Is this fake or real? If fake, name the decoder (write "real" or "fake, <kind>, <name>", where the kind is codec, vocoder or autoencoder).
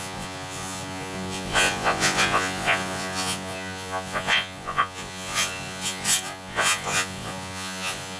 fake, vocoder, Vocos